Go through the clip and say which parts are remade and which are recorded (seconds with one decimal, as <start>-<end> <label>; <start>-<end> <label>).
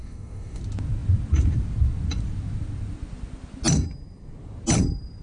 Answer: 0.0-0.6 remade; 0.6-5.2 recorded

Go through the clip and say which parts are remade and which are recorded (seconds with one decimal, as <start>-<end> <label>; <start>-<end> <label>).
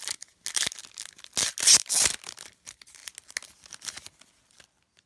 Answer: 0.0-5.1 recorded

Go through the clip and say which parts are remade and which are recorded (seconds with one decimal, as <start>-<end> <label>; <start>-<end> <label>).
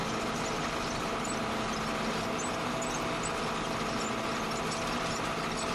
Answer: 0.0-5.7 recorded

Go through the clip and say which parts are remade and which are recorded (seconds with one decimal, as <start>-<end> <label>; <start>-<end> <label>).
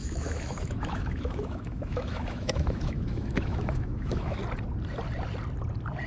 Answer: 0.0-4.4 remade; 4.4-6.1 recorded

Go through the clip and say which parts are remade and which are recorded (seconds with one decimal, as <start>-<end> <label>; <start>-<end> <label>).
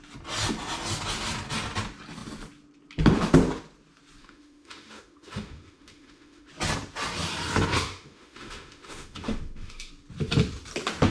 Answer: 0.0-4.2 recorded; 4.2-6.5 remade; 6.5-7.7 recorded; 7.7-9.9 remade; 9.9-11.1 recorded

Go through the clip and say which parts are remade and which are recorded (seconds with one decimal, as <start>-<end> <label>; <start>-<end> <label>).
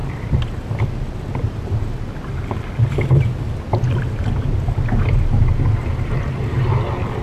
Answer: 0.0-7.2 recorded